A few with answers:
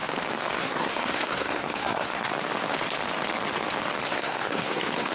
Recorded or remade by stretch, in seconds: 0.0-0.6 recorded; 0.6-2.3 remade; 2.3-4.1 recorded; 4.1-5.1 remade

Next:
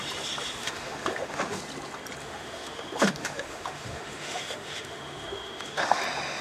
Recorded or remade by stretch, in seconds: 0.0-0.6 recorded; 0.6-1.6 remade; 1.6-2.2 recorded; 2.2-6.0 remade; 6.0-6.4 recorded

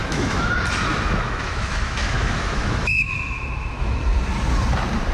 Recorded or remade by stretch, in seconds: 0.0-0.5 remade; 0.5-0.9 recorded; 0.9-4.0 remade; 4.0-5.1 recorded